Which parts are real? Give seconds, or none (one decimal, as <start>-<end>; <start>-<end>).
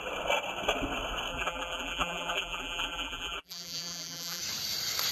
0.0-1.3; 4.4-5.1